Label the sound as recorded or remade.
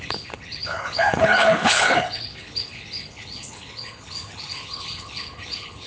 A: remade